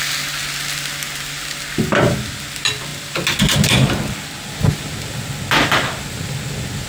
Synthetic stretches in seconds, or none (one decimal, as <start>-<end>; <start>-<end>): none